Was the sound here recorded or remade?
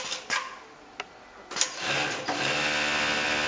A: recorded